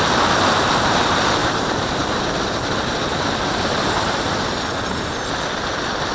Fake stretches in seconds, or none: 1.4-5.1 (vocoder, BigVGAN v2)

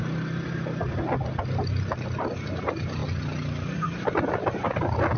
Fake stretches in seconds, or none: none

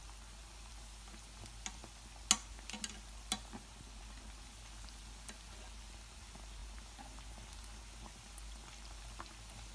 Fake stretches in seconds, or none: none